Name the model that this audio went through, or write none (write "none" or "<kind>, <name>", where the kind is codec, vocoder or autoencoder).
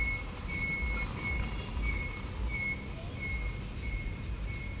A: none